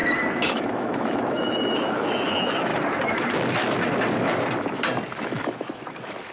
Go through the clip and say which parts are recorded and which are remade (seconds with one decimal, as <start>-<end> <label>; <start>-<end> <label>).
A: 0.0-0.5 recorded; 0.5-2.7 remade; 2.7-5.2 recorded; 5.2-6.3 remade